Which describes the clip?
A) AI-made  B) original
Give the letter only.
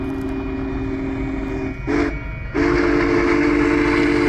B